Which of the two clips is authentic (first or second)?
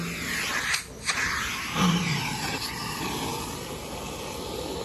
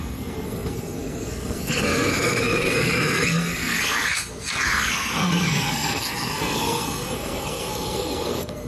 first